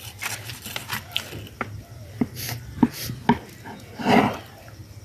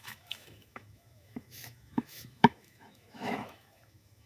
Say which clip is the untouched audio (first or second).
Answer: first